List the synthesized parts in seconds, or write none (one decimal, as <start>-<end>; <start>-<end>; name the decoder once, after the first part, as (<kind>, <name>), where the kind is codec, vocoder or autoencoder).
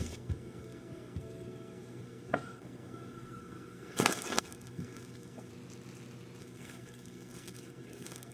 0.0-5.5 (codec, SNAC); 6.4-8.3